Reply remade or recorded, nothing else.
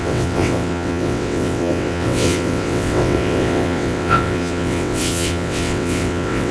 remade